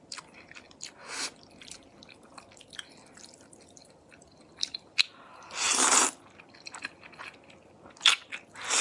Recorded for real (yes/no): yes